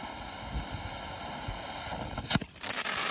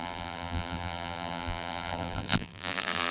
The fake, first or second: second